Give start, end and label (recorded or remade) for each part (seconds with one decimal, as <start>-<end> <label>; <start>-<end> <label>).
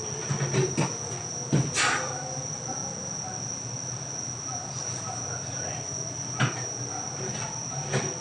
0.0-8.2 recorded